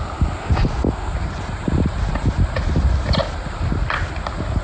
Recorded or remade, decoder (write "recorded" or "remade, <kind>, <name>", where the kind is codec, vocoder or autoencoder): recorded